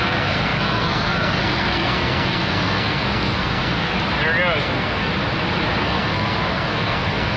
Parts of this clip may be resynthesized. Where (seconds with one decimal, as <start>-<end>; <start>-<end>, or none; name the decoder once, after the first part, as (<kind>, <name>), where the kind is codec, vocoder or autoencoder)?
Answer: 0.0-3.9 (codec, SNAC); 4.6-5.1; 5.8-7.4